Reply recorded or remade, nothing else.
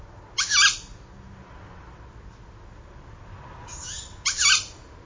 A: recorded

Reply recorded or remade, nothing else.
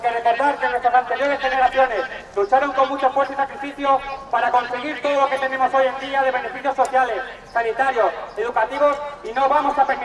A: recorded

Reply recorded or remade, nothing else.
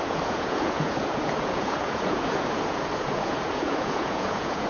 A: remade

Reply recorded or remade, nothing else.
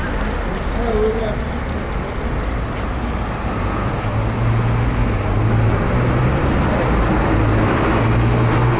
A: recorded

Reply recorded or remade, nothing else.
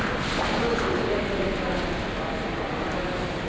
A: recorded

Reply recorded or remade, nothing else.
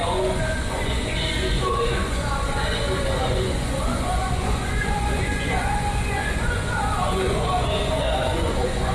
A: remade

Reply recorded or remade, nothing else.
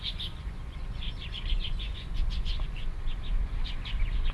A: remade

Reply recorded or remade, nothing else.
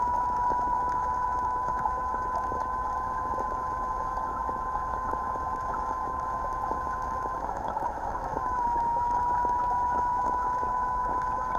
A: remade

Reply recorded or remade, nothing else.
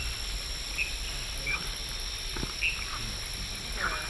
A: recorded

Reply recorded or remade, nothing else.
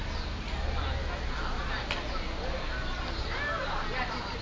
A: recorded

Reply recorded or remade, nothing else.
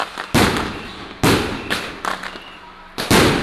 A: recorded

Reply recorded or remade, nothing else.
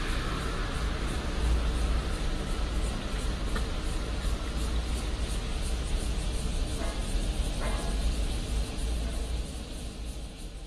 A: recorded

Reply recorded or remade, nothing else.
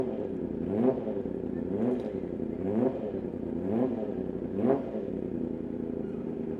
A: remade